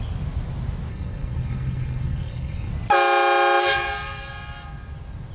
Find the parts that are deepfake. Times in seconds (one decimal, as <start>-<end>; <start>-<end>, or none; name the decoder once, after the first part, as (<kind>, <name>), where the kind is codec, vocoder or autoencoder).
0.9-2.7 (codec, SNAC)